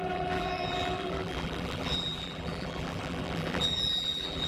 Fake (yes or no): yes